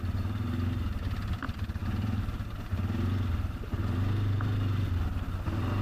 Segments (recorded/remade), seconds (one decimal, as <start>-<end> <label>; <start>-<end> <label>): 0.0-5.8 recorded